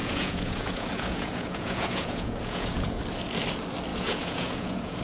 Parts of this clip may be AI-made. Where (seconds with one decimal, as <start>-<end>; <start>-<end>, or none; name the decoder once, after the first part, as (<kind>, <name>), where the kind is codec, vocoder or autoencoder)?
0.0-3.0 (vocoder, Vocos); 3.9-5.0